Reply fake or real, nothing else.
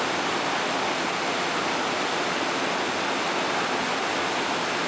real